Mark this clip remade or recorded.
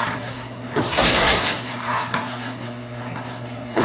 remade